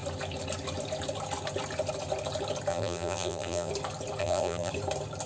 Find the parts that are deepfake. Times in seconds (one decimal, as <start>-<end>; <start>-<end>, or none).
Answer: 2.7-3.7; 4.2-4.7